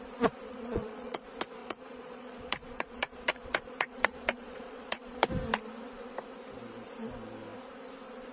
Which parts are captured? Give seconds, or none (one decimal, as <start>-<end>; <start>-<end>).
0.0-0.5; 1.2-1.6; 5.3-8.3